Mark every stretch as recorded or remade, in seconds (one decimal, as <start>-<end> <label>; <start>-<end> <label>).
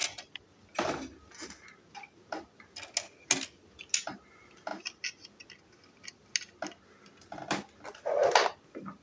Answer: 0.0-9.0 recorded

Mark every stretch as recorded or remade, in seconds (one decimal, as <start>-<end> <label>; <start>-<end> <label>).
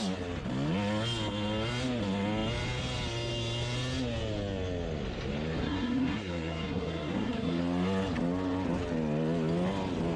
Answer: 0.0-5.6 recorded; 5.6-7.6 remade; 7.6-10.2 recorded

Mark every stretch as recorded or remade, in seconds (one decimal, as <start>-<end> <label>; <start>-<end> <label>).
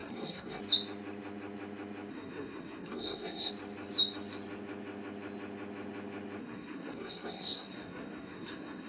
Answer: 0.0-0.6 remade; 0.6-2.1 recorded; 2.1-3.5 remade; 3.5-6.4 recorded; 6.4-8.9 remade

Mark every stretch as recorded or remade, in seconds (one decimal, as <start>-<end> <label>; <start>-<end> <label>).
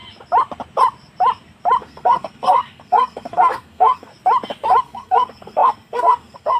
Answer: 0.0-1.8 recorded; 1.8-4.1 remade; 4.1-4.8 recorded; 4.8-6.6 remade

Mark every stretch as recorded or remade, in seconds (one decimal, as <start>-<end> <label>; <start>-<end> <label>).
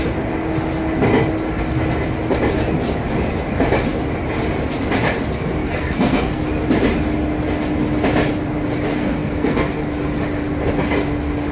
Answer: 0.0-5.6 recorded; 5.6-6.4 remade; 6.4-8.9 recorded; 8.9-9.8 remade; 9.8-11.5 recorded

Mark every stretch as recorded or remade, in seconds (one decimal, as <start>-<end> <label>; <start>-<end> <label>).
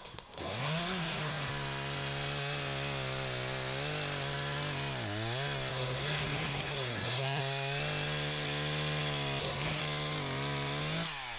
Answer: 0.0-1.5 remade; 1.5-5.7 recorded; 5.7-7.4 remade; 7.4-9.4 recorded; 9.4-9.8 remade; 9.8-11.4 recorded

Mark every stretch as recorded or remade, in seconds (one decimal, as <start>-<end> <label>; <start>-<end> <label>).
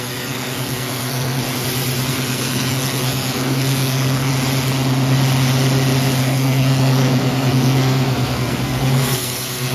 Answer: 0.0-1.4 remade; 1.4-2.1 recorded; 2.1-4.3 remade; 4.3-6.2 recorded; 6.2-9.7 remade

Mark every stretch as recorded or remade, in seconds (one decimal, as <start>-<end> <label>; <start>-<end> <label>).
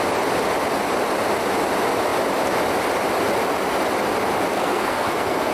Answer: 0.0-4.5 recorded; 4.5-5.5 remade